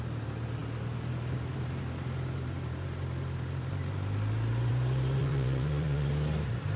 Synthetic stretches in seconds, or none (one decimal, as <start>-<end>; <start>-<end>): 5.2-6.1